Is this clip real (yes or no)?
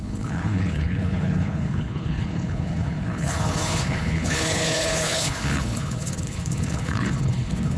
no